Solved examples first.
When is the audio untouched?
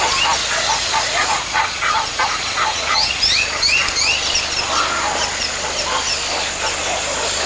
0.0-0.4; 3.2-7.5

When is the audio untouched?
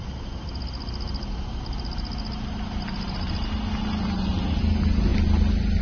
0.0-5.8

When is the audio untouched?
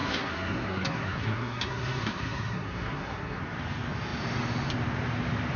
3.4-5.6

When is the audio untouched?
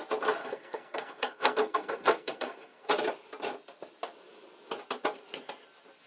0.0-0.4; 2.9-6.1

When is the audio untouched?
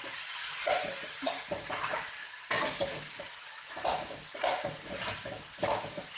0.0-6.2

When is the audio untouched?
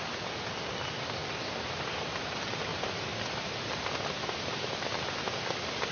0.0-5.9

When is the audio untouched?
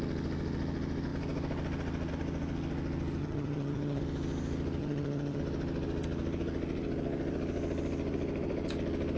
0.0-3.2; 4.0-4.8; 5.4-9.2